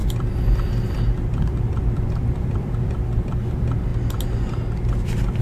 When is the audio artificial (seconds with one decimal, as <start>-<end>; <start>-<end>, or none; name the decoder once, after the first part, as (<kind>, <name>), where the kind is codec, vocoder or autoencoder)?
0.0-3.9 (vocoder, BigVGAN v2); 5.0-5.4